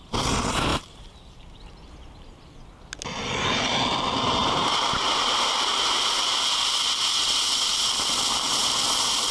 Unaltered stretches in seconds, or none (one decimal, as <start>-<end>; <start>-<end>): 0.0-0.7; 1.6-4.4; 6.2-9.3